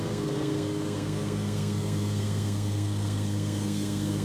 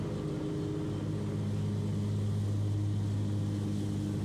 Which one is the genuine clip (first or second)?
second